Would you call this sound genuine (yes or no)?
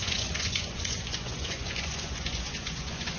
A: no